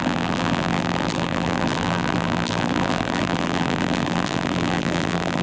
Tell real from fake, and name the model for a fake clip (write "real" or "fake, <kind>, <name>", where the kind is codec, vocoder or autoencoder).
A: fake, vocoder, BigVGAN v2